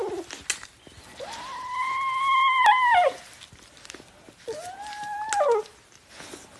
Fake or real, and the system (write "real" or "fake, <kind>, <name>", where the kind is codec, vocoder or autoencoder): real